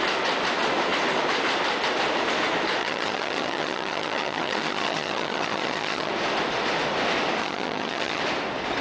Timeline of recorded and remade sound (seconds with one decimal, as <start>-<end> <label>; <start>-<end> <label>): 0.0-2.8 recorded; 2.8-6.1 remade; 6.1-7.4 recorded; 7.4-8.2 remade; 8.2-8.8 recorded